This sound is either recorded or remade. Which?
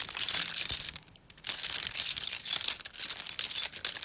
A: recorded